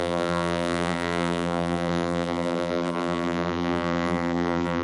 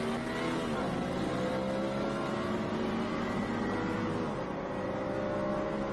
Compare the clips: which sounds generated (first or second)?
first